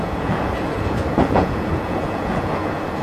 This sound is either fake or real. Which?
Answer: fake